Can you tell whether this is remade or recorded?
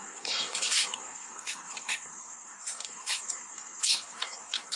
remade